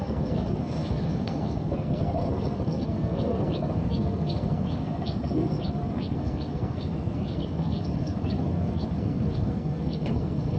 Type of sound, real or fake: fake